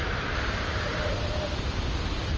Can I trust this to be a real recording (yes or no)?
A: yes